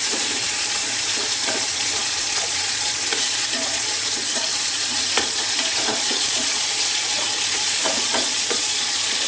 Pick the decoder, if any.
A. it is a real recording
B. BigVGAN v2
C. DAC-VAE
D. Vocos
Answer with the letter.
D